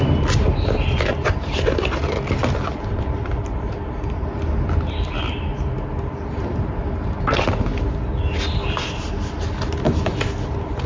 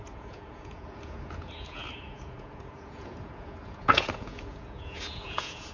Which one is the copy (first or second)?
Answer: second